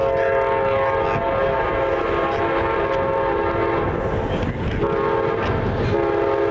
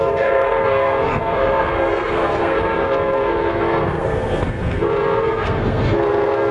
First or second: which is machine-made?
second